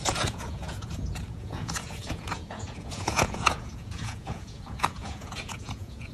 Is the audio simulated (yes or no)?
yes